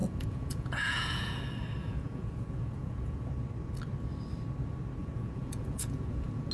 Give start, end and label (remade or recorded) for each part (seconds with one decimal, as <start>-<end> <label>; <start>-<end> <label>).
0.0-1.4 remade; 1.4-1.8 recorded; 1.8-3.3 remade; 3.3-5.0 recorded; 5.0-6.5 remade